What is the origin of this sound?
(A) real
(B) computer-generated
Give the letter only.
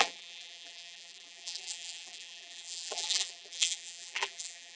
B